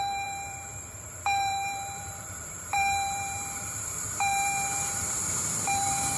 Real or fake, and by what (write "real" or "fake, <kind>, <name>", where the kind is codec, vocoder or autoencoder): fake, vocoder, BigVGAN v2